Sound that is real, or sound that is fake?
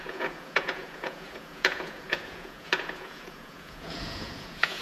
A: fake